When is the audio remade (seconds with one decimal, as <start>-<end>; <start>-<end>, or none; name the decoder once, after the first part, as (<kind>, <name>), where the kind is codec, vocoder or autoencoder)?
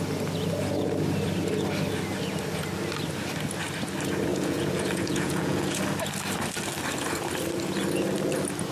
4.3-5.8 (vocoder, Vocos)